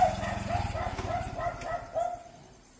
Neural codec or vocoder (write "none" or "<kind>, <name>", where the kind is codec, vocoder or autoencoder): none